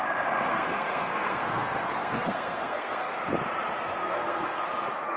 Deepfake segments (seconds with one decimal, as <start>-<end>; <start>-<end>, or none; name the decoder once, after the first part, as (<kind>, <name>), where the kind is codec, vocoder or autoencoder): 0.5-3.1 (codec, SNAC); 4.0-4.6